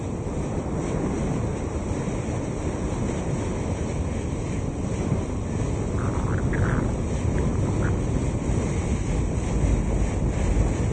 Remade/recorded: recorded